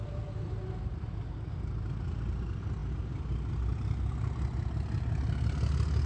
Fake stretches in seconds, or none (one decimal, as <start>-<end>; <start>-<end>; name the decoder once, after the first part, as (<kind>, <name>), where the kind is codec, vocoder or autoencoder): none